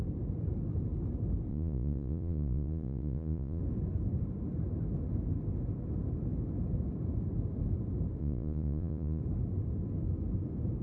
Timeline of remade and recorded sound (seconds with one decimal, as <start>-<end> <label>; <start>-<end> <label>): 0.0-1.5 recorded; 1.5-3.6 remade; 3.6-8.2 recorded; 8.2-9.2 remade; 9.2-10.8 recorded